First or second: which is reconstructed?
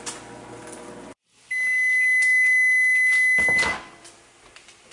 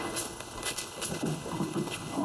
second